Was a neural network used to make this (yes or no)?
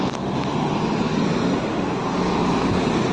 no